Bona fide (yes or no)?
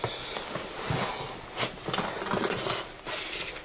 yes